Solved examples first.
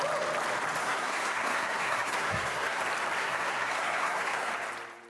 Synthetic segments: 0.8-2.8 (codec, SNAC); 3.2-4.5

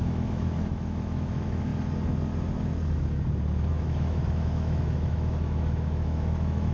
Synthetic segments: 0.0-1.7 (autoencoder, DAC-VAE); 3.7-6.7

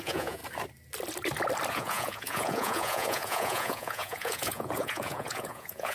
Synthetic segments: 0.0-0.4 (vocoder, Vocos); 1.7-5.9

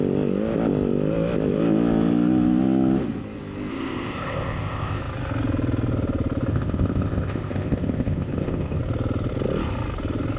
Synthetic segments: 3.7-5.0 (codec, ZipCodec); 6.5-8.8

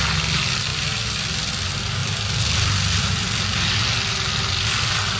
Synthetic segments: none

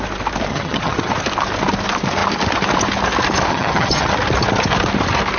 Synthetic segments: 0.5-1.1 (vocoder, HiFi-GAN); 3.5-4.1

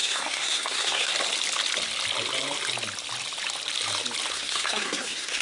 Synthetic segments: 0.0-1.1 (codec, SNAC); 4.3-5.4